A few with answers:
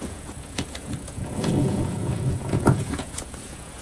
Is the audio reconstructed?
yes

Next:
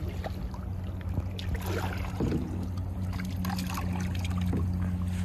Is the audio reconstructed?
no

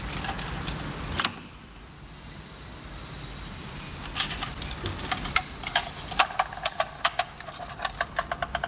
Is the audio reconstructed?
no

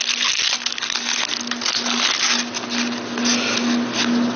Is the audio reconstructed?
no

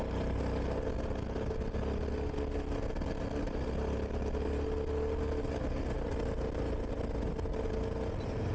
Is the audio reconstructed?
no